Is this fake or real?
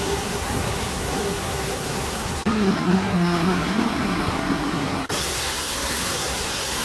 fake